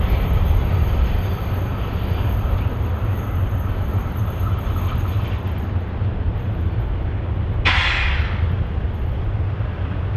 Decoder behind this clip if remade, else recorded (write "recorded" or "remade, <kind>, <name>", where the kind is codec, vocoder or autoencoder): recorded